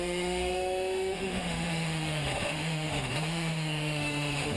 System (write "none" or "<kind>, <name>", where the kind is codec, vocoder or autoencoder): autoencoder, DAC-VAE